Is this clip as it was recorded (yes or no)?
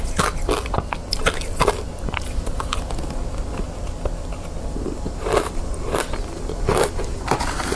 yes